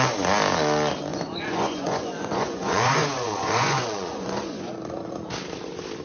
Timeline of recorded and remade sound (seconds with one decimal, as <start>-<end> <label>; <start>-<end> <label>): 0.0-1.1 recorded; 1.1-4.7 remade; 4.7-6.0 recorded